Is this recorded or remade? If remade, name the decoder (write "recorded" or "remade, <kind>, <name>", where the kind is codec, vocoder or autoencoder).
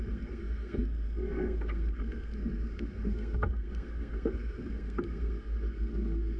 remade, codec, SNAC